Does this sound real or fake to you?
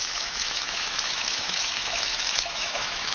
fake